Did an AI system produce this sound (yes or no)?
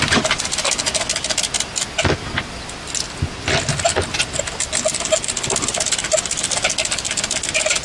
no